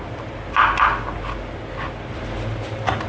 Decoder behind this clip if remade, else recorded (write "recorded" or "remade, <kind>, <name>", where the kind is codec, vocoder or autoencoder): recorded